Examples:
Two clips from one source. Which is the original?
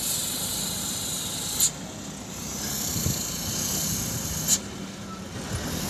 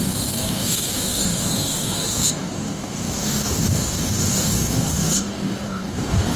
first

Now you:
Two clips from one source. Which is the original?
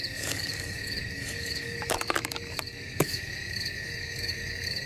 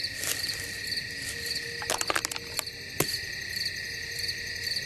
second